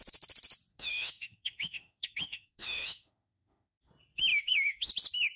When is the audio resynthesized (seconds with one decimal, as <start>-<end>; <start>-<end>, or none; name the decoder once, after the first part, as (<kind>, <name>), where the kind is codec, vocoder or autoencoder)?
0.7-3.9 (autoencoder, DAC-VAE); 4.3-4.9